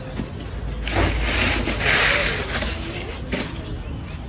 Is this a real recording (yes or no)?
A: yes